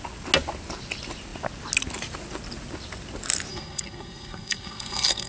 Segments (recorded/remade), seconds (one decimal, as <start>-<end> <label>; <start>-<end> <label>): 0.0-3.5 recorded; 3.5-5.3 remade